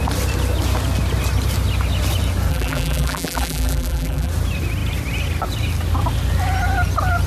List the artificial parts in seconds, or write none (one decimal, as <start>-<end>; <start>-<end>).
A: 2.5-4.3